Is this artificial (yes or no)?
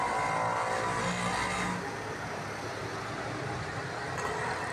no